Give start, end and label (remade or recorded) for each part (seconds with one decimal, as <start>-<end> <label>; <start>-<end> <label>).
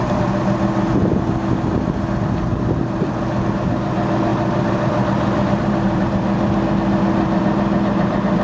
0.0-4.3 recorded; 4.3-6.7 remade; 6.7-8.4 recorded